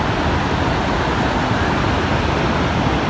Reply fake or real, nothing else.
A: real